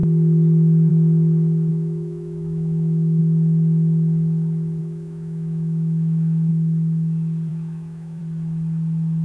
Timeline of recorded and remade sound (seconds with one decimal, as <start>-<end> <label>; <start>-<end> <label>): 0.0-1.7 recorded; 1.7-3.2 remade; 3.2-4.8 recorded; 4.8-6.5 remade; 6.5-7.5 recorded; 7.5-8.2 remade; 8.2-9.2 recorded